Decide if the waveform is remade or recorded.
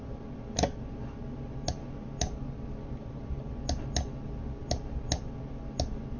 recorded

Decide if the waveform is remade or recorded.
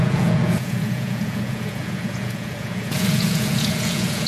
remade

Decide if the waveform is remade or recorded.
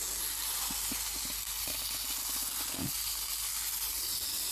recorded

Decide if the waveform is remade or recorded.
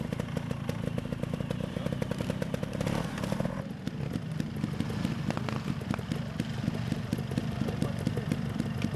recorded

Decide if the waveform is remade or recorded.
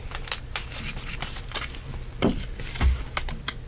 recorded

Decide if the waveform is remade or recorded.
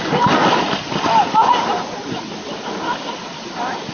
recorded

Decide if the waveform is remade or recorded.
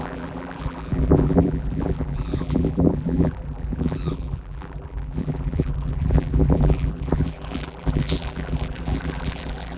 remade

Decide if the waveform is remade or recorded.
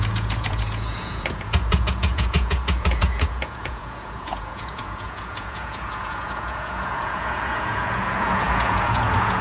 remade